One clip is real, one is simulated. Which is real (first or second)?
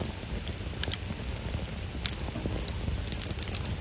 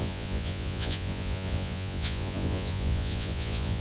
first